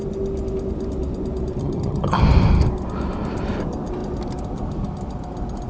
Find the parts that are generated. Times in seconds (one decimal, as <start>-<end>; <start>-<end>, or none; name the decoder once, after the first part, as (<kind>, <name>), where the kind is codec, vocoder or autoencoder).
1.6-2.2 (vocoder, HiFi-GAN)